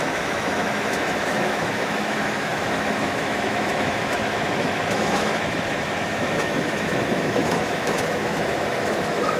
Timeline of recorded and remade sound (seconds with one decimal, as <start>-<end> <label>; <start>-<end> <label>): 0.0-9.4 remade